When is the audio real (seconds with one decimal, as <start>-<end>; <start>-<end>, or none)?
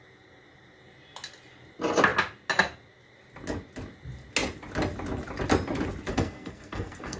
0.0-6.1